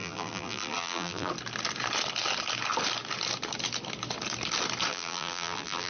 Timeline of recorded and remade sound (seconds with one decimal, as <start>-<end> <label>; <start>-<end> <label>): 0.0-1.3 remade; 1.3-4.9 recorded; 4.9-5.9 remade

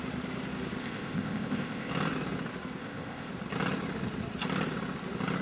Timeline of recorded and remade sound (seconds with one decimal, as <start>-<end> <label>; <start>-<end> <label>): 0.0-0.8 recorded; 0.8-1.9 remade; 1.9-2.8 recorded; 2.8-3.3 remade; 3.3-5.4 recorded

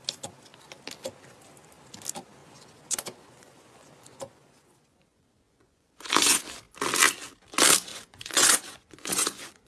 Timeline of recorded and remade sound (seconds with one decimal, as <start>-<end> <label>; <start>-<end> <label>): 0.0-2.4 recorded; 2.4-6.4 remade; 6.4-7.9 recorded; 7.9-9.7 remade

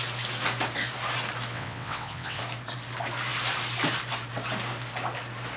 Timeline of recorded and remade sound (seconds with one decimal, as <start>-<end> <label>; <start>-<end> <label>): 0.0-1.5 recorded; 1.5-2.4 remade; 2.4-5.6 recorded